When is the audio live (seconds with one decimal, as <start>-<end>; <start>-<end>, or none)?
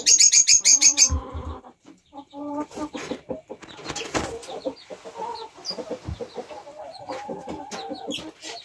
0.0-0.7; 3.2-8.6